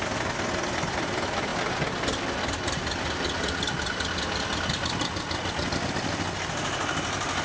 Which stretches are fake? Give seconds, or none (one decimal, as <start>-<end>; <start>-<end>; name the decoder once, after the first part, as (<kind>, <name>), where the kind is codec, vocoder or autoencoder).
none